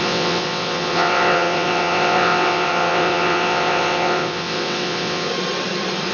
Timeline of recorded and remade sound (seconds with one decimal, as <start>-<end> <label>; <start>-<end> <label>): 0.0-5.3 remade; 5.3-6.1 recorded

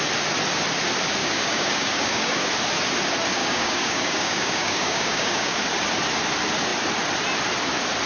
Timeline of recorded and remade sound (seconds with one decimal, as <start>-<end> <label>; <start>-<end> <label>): 0.0-1.2 recorded; 1.2-2.5 remade; 2.5-3.4 recorded; 3.4-5.6 remade; 5.6-8.1 recorded